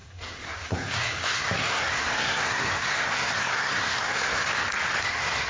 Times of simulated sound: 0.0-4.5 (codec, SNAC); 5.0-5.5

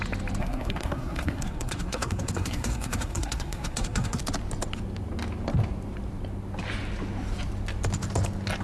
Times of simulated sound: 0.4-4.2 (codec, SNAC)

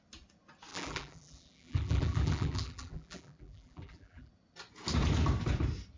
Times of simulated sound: 0.7-4.3 (vocoder, BigVGAN v2)

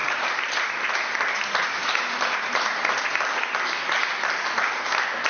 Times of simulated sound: 0.0-3.2 (vocoder, BigVGAN v2)